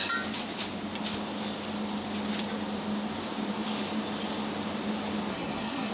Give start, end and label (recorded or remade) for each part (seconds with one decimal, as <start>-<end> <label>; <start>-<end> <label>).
0.0-5.3 recorded; 5.3-5.9 remade